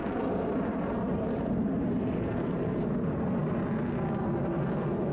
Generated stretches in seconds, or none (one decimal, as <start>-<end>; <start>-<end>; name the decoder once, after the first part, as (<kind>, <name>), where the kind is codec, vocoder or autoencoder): 0.0-2.9 (vocoder, BigVGAN v2)